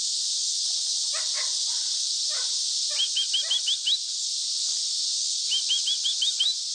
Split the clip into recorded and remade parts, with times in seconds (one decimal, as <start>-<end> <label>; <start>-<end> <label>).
0.0-6.7 recorded